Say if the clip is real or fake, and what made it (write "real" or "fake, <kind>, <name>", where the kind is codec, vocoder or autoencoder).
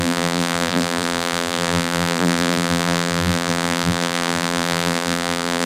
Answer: fake, vocoder, BigVGAN v2